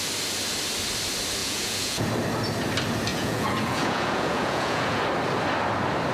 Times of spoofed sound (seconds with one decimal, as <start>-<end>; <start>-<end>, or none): 1.4-2.1; 3.1-5.0